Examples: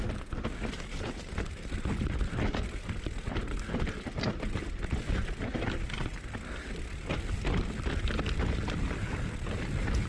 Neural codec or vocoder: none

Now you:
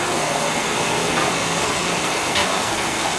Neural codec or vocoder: codec, SNAC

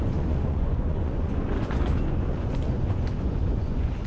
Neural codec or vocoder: vocoder, Vocos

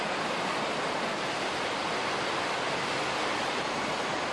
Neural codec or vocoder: none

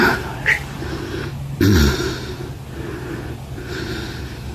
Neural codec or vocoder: none